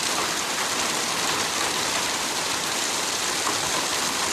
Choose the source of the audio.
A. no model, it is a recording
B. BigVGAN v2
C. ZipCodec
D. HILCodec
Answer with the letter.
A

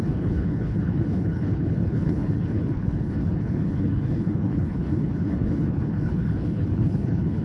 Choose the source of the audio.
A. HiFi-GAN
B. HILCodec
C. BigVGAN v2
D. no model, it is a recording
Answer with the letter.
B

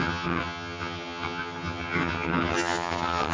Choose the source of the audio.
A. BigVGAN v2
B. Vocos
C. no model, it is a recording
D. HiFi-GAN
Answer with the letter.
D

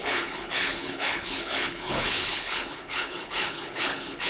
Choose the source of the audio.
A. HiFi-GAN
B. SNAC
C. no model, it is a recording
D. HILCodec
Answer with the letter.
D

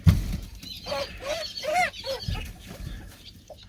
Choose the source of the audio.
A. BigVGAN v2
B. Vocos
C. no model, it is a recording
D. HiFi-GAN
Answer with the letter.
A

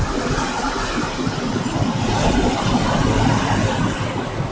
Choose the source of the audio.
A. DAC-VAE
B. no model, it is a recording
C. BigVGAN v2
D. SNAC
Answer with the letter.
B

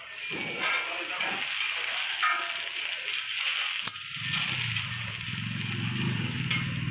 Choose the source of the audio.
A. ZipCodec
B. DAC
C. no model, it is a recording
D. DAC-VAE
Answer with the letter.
C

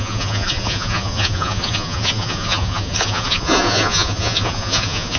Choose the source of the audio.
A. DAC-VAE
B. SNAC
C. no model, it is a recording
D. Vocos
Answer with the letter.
D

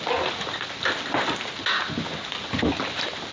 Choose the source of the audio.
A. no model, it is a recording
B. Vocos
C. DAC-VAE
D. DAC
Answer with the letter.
A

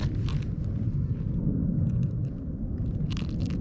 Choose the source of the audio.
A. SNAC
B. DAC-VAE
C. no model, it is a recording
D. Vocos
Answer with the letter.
C